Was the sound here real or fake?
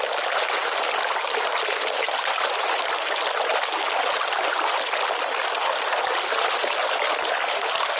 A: real